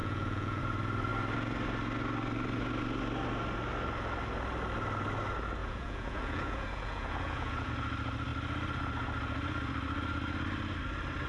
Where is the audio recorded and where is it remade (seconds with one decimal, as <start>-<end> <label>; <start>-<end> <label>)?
0.0-0.6 remade; 0.6-5.6 recorded; 5.6-7.7 remade; 7.7-11.3 recorded